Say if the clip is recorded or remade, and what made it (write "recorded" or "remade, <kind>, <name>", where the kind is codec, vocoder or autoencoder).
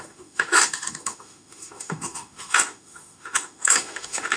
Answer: remade, autoencoder, DAC-VAE